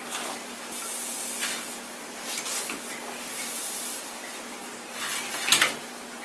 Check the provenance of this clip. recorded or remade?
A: recorded